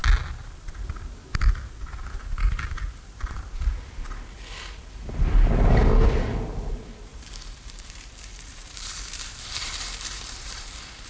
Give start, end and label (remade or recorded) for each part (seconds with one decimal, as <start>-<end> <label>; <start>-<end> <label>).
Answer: 0.0-7.1 recorded; 7.1-10.7 remade; 10.7-11.1 recorded